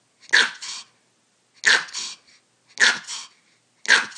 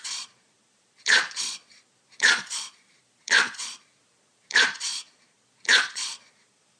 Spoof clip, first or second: second